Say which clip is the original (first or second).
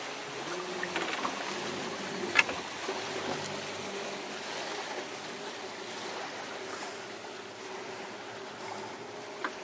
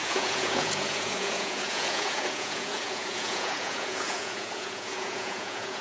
first